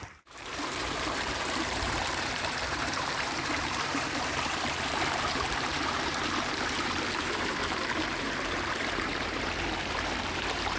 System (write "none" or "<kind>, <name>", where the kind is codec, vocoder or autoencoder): vocoder, BigVGAN v2